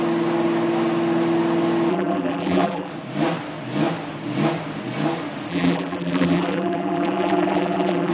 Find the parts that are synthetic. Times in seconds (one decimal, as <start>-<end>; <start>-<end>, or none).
1.9-2.9; 5.5-8.1